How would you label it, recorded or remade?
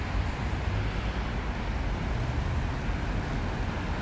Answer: recorded